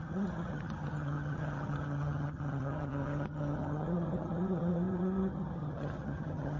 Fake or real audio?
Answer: fake